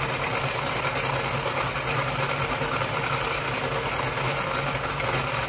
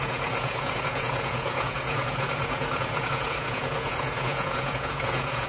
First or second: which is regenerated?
second